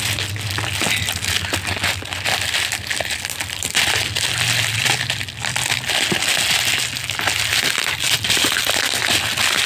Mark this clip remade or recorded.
recorded